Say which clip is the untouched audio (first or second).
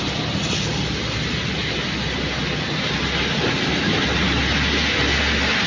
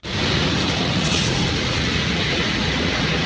first